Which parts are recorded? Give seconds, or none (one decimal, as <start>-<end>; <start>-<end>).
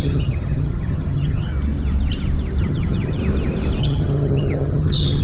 1.5-2.6; 3.2-3.8